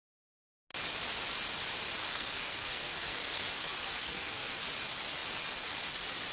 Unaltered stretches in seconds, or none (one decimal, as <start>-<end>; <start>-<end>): 0.0-2.0; 4.6-6.3